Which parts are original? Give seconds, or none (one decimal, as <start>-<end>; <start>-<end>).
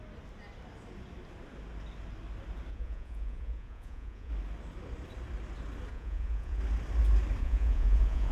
0.0-2.7; 4.3-5.9; 6.6-7.4